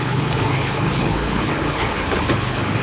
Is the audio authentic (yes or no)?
no